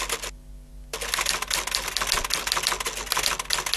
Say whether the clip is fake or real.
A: real